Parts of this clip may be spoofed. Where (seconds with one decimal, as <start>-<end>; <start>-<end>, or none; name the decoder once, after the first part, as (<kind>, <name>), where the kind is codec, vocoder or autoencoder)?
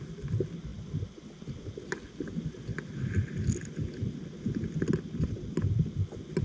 none